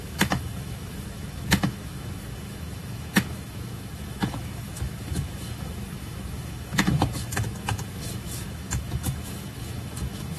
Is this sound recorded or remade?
remade